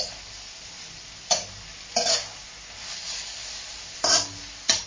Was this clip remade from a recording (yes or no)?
yes